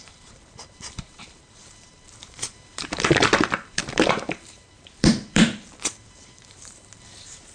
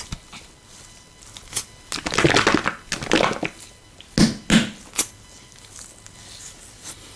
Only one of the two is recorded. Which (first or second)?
second